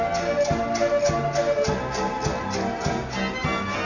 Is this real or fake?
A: real